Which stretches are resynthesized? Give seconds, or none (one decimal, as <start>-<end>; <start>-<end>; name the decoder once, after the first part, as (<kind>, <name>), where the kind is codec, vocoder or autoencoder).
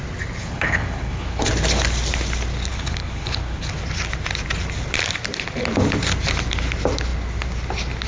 0.4-1.5 (codec, HILCodec); 2.7-3.7